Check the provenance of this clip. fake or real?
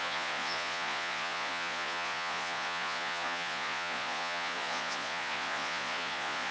fake